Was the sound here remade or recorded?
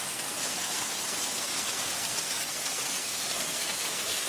remade